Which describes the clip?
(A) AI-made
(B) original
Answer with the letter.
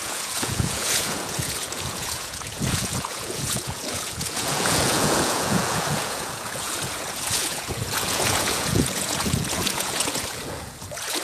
A